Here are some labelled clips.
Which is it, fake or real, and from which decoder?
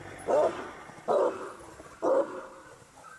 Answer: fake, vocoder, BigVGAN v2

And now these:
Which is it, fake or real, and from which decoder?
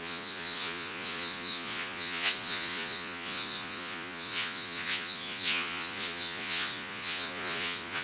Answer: fake, vocoder, Vocos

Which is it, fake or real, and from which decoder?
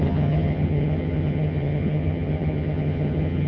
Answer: fake, vocoder, HiFi-GAN